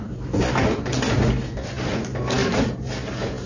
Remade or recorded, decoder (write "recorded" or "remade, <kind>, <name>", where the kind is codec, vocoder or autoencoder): recorded